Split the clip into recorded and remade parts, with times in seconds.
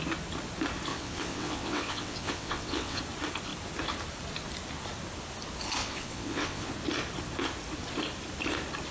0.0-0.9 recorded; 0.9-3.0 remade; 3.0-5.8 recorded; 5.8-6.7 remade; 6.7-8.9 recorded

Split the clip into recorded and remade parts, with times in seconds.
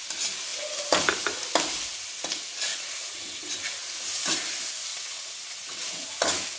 0.0-2.7 recorded; 2.7-3.5 remade; 3.5-4.9 recorded; 4.9-6.0 remade; 6.0-6.6 recorded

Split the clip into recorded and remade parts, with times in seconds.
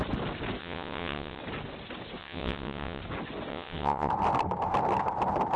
0.0-0.6 recorded; 0.6-1.4 remade; 1.4-2.2 recorded; 2.2-3.0 remade; 3.0-3.5 recorded; 3.5-4.1 remade; 4.1-5.6 recorded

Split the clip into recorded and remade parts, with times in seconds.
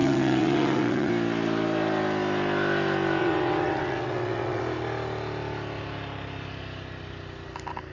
0.0-1.1 remade; 1.1-3.2 recorded; 3.2-4.6 remade; 4.6-7.9 recorded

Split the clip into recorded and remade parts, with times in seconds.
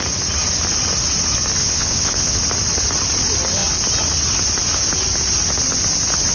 0.0-1.6 recorded; 1.6-2.4 remade; 2.4-6.3 recorded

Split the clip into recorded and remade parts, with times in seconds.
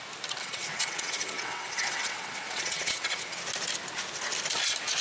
0.0-0.4 recorded; 0.4-3.4 remade; 3.4-5.0 recorded